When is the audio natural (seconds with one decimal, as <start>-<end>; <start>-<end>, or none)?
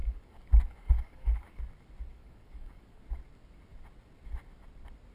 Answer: 1.6-2.1; 3.0-5.1